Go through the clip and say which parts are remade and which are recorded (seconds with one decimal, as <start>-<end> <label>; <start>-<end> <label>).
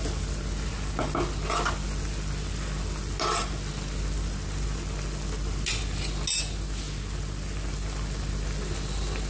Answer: 0.0-9.3 recorded